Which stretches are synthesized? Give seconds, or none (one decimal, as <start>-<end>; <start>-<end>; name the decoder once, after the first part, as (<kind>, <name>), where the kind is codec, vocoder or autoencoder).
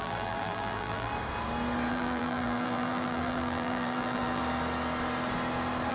0.0-1.1 (vocoder, BigVGAN v2); 1.9-4.4